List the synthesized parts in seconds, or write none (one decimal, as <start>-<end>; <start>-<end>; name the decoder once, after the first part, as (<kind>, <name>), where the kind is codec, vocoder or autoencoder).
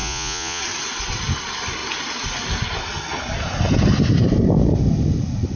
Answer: 0.0-0.6 (vocoder, Vocos)